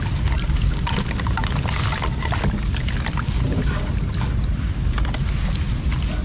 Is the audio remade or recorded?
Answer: recorded